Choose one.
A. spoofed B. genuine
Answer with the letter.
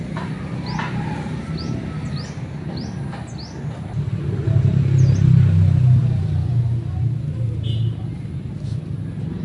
B